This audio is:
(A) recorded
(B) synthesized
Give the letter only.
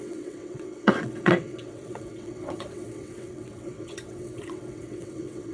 B